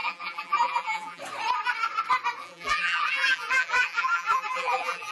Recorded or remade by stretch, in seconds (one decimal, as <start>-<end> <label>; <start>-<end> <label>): 0.0-1.2 remade; 1.2-2.4 recorded; 2.4-5.1 remade

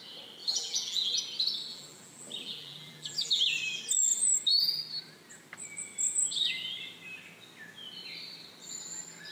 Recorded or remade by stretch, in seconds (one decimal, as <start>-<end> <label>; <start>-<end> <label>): 0.0-0.4 recorded; 0.4-1.2 remade; 1.2-1.7 recorded; 1.7-3.4 remade; 3.4-9.3 recorded

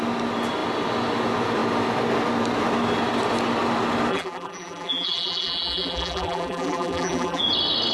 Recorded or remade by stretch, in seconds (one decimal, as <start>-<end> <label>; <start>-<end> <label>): 0.0-4.1 recorded; 4.1-7.4 remade; 7.4-7.9 recorded

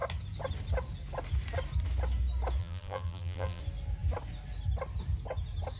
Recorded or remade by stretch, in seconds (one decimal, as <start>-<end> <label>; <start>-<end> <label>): 0.0-2.6 recorded; 2.6-3.6 remade; 3.6-5.8 recorded